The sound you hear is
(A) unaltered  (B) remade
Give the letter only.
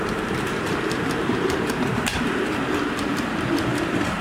B